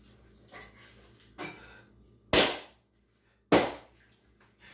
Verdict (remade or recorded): recorded